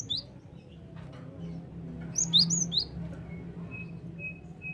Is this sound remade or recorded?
recorded